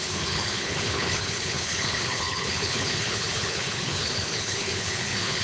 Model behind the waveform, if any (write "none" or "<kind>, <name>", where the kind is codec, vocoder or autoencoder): codec, HILCodec